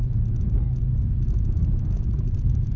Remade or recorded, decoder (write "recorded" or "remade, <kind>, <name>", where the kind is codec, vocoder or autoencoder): remade, vocoder, BigVGAN v2